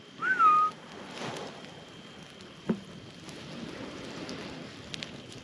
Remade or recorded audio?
recorded